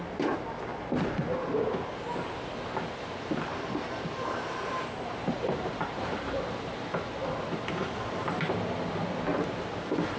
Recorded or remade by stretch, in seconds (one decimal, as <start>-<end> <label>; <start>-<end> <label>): 0.0-3.5 recorded; 3.5-6.9 remade; 6.9-9.3 recorded; 9.3-10.2 remade